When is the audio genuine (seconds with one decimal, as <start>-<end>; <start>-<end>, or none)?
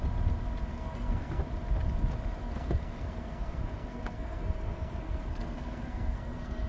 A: 0.0-0.7; 1.4-2.4